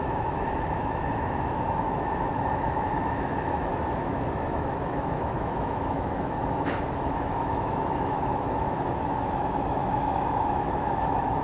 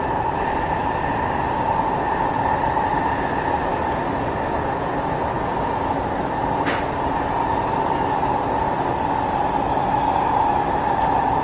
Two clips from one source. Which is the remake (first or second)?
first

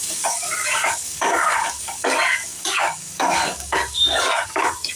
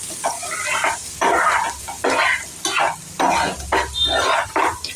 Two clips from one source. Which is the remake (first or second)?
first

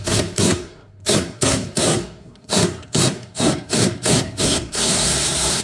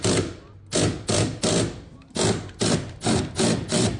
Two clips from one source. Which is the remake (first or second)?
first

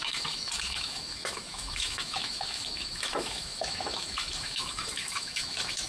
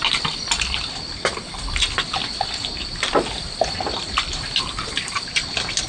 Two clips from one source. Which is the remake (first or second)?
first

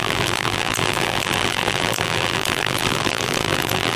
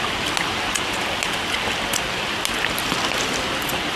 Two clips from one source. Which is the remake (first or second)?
first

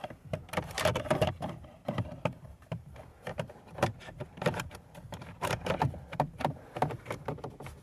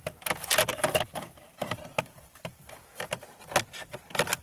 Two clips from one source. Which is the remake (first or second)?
first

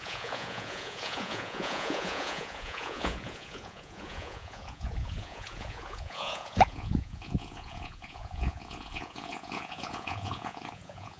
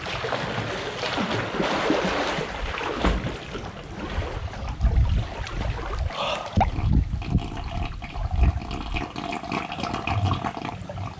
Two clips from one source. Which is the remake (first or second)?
first